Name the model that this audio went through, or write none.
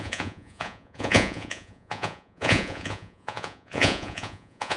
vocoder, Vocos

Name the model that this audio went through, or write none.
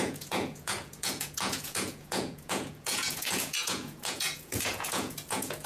vocoder, Vocos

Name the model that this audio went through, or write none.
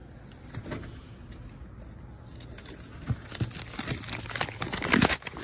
none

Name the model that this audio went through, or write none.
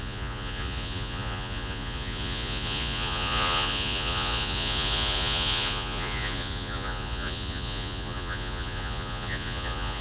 vocoder, Vocos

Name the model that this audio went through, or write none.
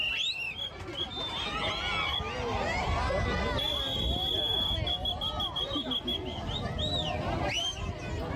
none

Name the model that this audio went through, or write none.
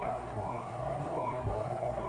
codec, SNAC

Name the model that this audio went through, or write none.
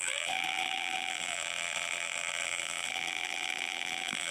vocoder, BigVGAN v2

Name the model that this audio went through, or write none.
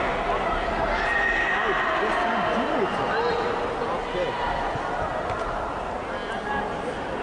none